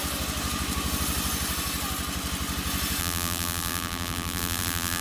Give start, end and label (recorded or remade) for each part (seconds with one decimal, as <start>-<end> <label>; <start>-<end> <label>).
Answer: 0.0-3.0 recorded; 3.0-5.0 remade